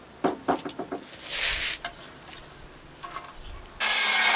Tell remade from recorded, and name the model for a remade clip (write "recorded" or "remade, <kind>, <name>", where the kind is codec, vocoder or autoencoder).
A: recorded